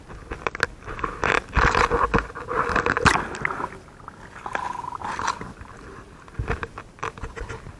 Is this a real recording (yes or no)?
yes